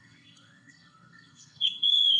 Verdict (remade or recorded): remade